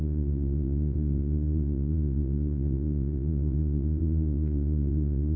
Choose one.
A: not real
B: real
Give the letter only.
A